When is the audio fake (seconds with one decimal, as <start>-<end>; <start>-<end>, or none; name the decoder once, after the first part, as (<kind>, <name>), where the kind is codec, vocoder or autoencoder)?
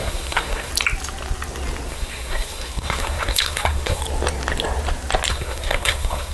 0.0-0.7 (codec, SNAC); 1.9-4.0; 5.3-6.3